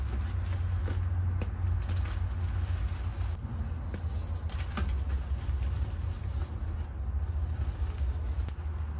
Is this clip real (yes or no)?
yes